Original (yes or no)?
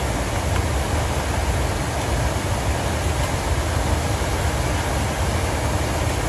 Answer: yes